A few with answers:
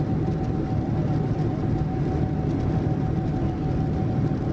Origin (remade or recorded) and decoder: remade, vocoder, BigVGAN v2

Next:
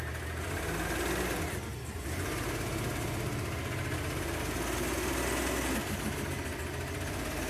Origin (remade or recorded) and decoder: recorded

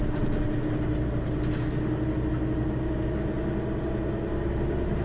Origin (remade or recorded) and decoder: recorded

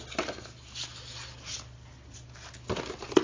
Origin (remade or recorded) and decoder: recorded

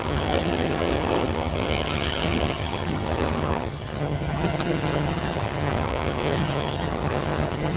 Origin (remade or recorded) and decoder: remade, vocoder, HiFi-GAN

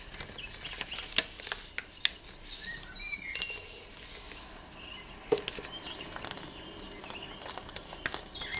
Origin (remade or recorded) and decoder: recorded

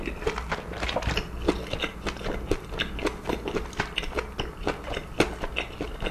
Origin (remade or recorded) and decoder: recorded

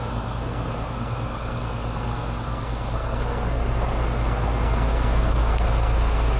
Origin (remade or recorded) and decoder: remade, codec, SNAC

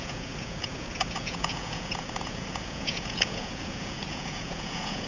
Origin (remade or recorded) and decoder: remade, vocoder, Vocos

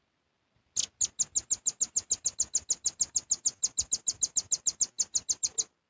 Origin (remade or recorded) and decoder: recorded